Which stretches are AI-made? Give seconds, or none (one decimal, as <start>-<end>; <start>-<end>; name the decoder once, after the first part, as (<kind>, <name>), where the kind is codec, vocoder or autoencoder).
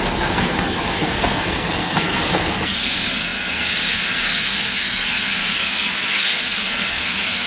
0.0-7.5 (codec, SNAC)